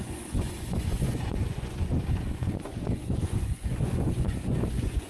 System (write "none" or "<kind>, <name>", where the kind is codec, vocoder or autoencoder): vocoder, Vocos